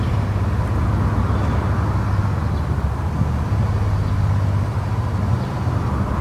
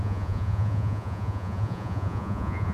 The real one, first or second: first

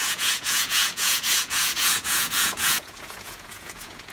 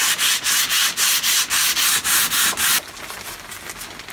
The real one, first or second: second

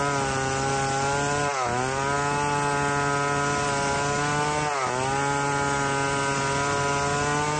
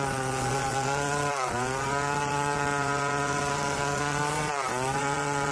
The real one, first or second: first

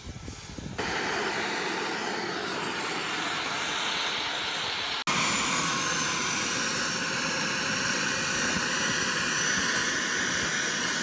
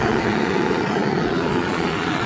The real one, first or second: first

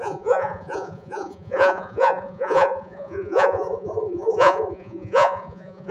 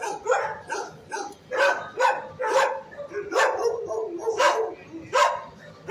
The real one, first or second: second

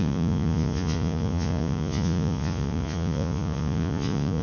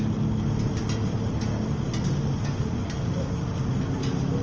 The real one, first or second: second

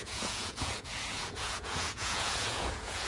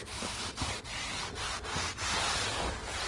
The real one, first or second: second